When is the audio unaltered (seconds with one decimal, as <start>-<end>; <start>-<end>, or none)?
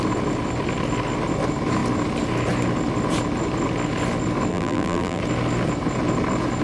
0.0-4.5; 5.2-6.6